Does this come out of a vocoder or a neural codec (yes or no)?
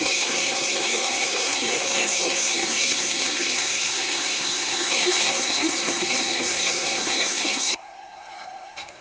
yes